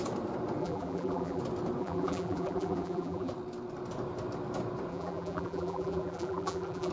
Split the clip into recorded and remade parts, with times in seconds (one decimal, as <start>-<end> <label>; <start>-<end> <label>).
0.0-0.6 recorded; 0.6-1.4 remade; 1.4-1.8 recorded; 1.8-3.3 remade; 3.3-4.9 recorded; 4.9-6.9 remade